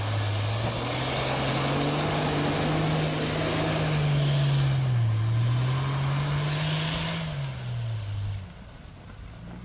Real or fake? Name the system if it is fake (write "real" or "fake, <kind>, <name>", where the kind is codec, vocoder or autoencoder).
real